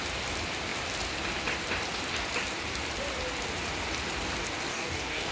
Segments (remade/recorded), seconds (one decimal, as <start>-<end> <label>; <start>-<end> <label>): 0.0-4.7 recorded; 4.7-5.3 remade